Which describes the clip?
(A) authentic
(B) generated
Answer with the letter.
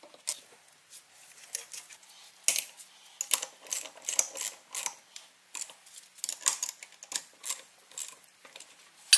A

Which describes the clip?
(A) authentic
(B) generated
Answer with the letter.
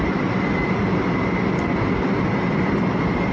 A